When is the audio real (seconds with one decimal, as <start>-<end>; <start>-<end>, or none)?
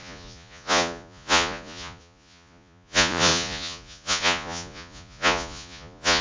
none